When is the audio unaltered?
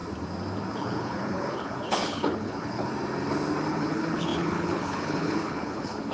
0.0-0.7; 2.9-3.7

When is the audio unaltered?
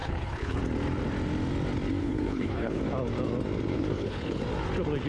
0.6-2.0; 2.8-3.7; 4.4-5.1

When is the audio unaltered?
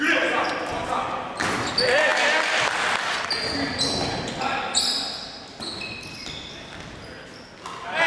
0.0-8.1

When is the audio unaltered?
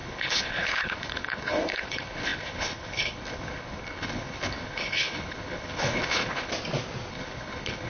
6.5-7.1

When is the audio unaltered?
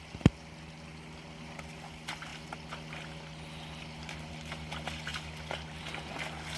0.0-6.6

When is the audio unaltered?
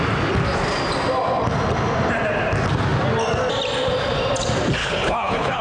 0.0-4.8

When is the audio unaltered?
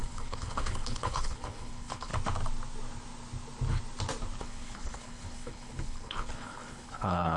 2.1-4.4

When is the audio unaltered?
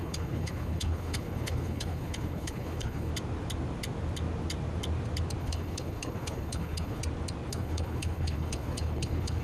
3.1-5.4; 7.0-7.5